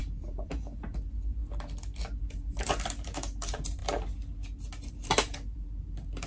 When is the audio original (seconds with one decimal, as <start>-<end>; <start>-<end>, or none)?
1.4-2.2; 3.8-4.9